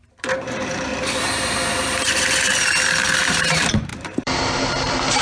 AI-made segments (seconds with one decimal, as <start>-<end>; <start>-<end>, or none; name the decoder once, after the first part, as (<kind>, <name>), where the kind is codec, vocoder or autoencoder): 0.0-0.9 (vocoder, BigVGAN v2); 3.2-5.2

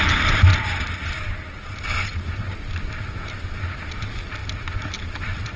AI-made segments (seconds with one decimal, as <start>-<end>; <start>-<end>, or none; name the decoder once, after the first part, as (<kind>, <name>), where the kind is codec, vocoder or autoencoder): none

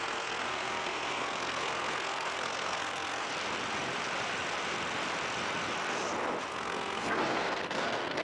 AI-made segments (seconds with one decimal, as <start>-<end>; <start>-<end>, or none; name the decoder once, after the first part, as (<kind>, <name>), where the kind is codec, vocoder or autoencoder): 0.0-3.3 (codec, SNAC); 6.5-8.2

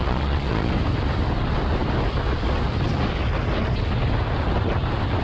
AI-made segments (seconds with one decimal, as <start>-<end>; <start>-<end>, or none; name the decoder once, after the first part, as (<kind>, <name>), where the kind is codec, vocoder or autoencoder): 0.0-0.7 (vocoder, Vocos)

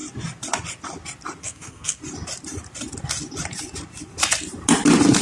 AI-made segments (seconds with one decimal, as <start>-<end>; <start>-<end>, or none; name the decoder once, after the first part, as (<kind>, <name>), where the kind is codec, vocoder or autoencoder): 1.4-2.0 (codec, SNAC)